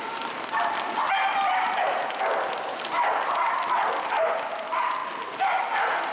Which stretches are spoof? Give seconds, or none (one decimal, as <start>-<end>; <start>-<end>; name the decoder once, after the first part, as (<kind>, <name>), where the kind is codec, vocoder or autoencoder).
none